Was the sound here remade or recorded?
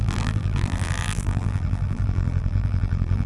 remade